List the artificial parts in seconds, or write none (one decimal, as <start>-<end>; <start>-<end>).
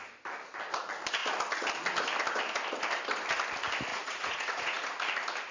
3.9-4.9